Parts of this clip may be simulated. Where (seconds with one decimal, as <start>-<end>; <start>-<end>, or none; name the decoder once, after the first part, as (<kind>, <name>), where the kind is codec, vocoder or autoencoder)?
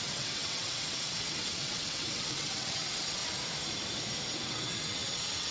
0.0-3.2 (vocoder, WaveNeXt); 4.3-5.5